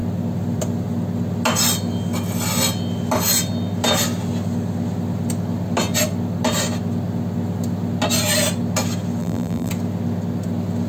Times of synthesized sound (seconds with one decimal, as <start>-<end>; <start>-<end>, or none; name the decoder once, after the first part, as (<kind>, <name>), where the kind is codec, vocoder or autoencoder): 9.2-9.7 (vocoder, BigVGAN v2)

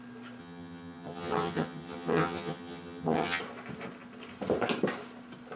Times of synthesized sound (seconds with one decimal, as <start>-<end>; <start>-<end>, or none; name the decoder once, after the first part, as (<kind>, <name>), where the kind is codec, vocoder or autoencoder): 0.4-3.4 (vocoder, HiFi-GAN)

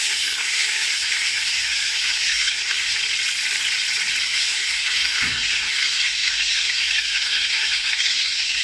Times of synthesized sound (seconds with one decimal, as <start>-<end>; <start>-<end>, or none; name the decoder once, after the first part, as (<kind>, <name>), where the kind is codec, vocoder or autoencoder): 0.0-2.9 (codec, SNAC); 4.2-8.6